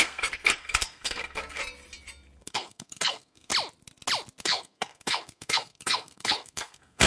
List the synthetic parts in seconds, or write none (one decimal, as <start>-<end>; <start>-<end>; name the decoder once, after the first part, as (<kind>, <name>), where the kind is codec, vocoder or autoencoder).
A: 0.0-1.6 (codec, SNAC); 2.4-3.5; 4.4-7.1